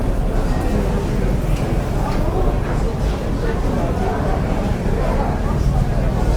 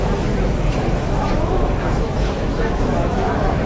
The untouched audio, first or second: first